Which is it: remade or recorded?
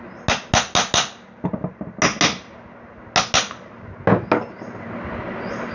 recorded